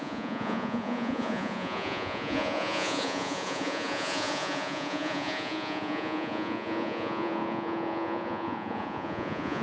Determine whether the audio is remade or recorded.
remade